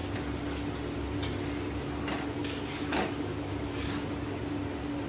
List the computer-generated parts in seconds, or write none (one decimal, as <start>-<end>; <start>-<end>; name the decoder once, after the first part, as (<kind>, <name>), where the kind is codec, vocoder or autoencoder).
2.4-3.9 (codec, DAC)

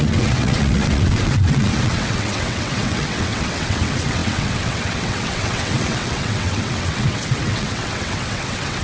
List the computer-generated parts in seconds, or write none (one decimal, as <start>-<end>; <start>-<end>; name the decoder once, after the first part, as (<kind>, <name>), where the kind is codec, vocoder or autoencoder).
0.0-8.8 (vocoder, WaveNeXt)

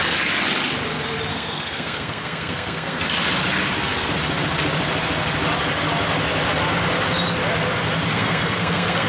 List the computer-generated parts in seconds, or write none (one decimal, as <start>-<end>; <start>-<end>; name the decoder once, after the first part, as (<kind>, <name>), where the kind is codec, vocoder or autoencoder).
1.3-3.0 (codec, SNAC); 8.1-9.1

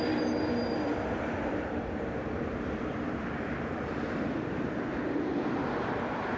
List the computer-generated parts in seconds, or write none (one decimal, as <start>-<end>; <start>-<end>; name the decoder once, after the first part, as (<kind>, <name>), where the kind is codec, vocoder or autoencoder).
0.9-4.7 (vocoder, BigVGAN v2)

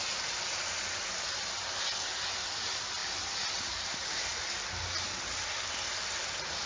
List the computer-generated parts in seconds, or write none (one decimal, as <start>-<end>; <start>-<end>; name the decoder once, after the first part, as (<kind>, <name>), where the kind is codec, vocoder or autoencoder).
none